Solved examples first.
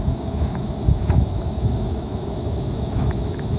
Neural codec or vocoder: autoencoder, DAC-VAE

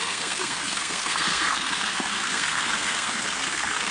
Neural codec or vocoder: codec, SNAC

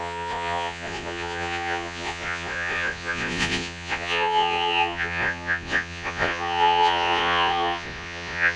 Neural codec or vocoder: vocoder, Vocos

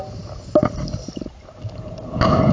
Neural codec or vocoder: none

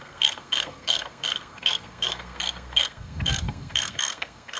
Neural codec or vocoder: codec, SNAC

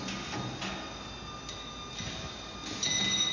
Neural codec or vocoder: none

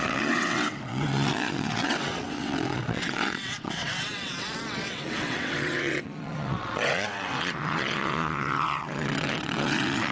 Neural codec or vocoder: vocoder, WaveNeXt